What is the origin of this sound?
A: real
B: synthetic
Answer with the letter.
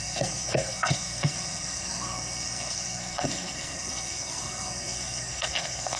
B